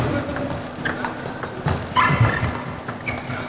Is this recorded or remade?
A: recorded